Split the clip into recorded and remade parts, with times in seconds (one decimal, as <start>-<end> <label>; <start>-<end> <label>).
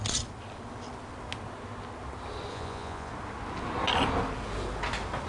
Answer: 0.0-2.5 recorded; 2.5-3.1 remade; 3.1-5.3 recorded